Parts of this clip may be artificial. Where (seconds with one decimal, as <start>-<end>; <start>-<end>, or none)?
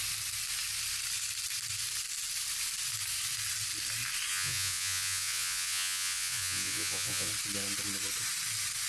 4.3-7.3